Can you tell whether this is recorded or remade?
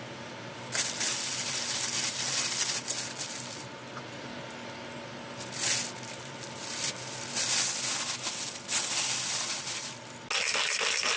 recorded